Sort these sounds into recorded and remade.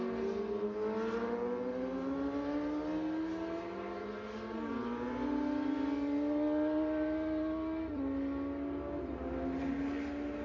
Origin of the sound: recorded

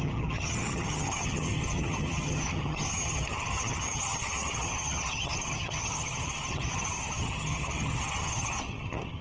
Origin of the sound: remade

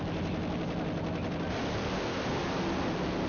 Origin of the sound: recorded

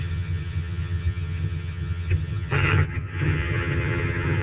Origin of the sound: remade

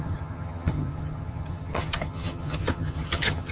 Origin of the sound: remade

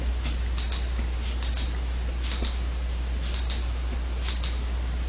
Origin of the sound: recorded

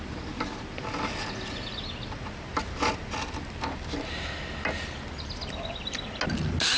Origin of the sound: recorded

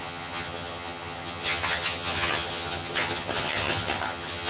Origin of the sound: remade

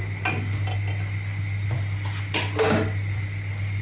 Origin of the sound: recorded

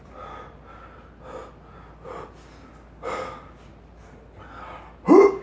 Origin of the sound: recorded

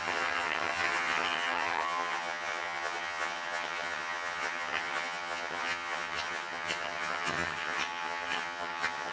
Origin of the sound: remade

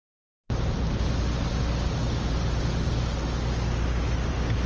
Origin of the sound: recorded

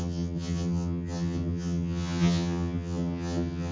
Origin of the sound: remade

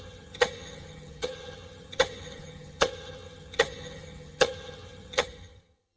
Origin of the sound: remade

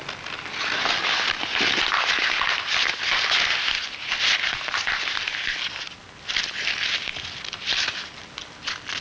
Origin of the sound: recorded